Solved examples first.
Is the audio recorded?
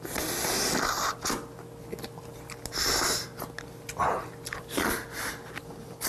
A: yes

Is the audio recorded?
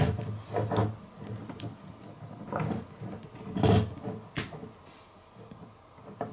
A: yes